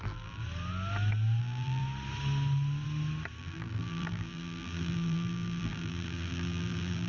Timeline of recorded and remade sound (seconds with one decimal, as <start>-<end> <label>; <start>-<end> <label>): 0.0-0.4 remade; 0.4-1.4 recorded; 1.4-1.8 remade; 1.8-3.4 recorded; 3.4-7.1 remade